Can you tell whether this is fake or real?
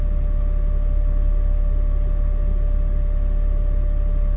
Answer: real